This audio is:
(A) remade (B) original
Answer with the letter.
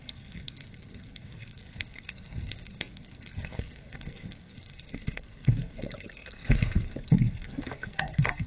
A